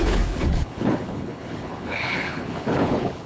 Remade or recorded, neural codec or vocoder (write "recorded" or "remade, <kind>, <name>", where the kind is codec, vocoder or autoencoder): remade, codec, HILCodec